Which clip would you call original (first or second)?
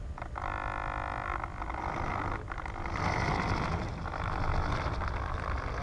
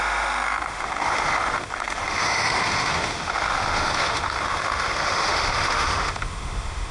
first